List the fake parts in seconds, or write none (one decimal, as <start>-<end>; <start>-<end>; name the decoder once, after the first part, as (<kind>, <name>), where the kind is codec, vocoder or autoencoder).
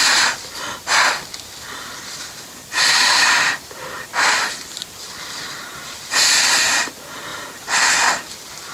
none